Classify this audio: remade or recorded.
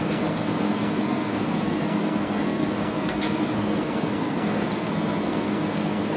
remade